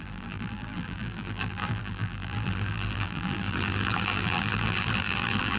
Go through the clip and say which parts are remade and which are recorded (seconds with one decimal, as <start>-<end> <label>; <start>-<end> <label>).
0.0-5.6 remade